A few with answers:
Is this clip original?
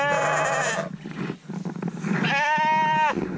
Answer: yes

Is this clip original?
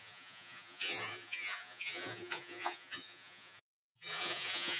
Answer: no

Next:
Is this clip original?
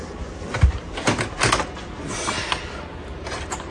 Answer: yes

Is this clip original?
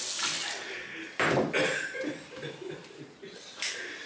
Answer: yes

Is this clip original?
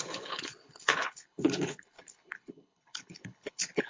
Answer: no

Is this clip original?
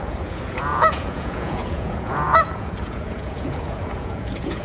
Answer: no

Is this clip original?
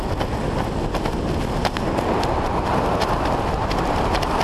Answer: yes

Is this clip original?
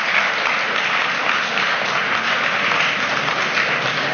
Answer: yes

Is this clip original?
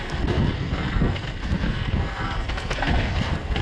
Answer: no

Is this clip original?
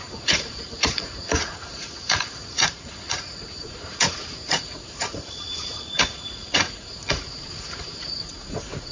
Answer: no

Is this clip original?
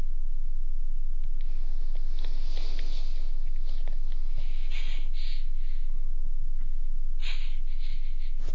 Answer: yes